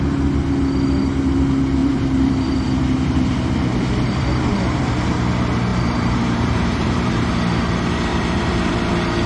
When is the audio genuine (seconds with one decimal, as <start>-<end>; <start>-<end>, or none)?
0.0-1.8; 4.9-5.7; 7.3-8.1; 8.7-9.3